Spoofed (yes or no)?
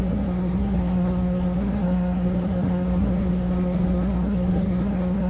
yes